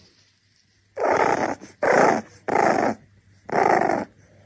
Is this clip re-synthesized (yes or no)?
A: no